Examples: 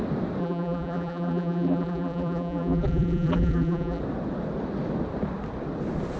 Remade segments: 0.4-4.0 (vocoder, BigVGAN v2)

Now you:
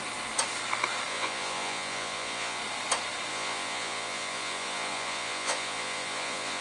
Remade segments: 1.1-2.6 (vocoder, Vocos); 3.3-6.6

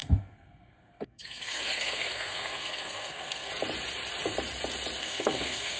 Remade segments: 0.0-3.5 (codec, SNAC); 5.0-5.8

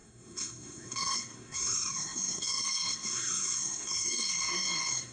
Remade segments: 0.0-5.1 (codec, SNAC)